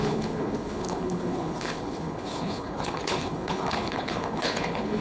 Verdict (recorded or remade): remade